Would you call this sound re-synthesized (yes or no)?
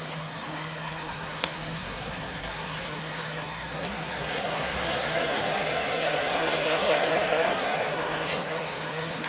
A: yes